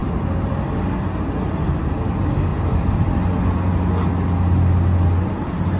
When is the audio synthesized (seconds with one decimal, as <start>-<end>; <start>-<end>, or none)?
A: none